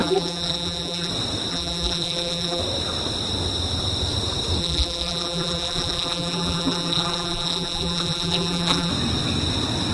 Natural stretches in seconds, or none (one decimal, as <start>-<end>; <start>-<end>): 1.1-1.5; 2.6-4.6; 8.9-9.9